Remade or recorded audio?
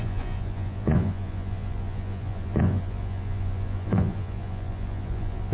remade